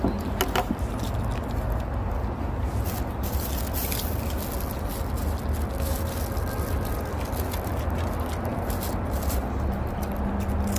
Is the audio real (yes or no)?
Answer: yes